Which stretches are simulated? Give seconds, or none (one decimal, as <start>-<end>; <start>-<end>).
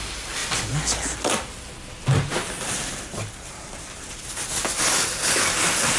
none